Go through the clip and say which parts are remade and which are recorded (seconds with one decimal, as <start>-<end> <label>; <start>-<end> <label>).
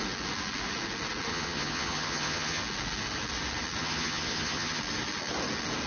0.0-1.3 recorded; 1.3-2.6 remade; 2.6-3.8 recorded; 3.8-4.8 remade; 4.8-5.9 recorded